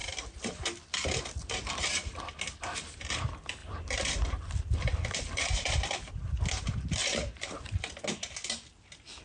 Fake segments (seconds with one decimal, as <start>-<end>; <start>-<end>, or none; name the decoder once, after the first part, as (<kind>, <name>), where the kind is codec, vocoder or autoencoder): 0.0-2.4 (vocoder, BigVGAN v2); 3.6-6.1; 7.0-8.0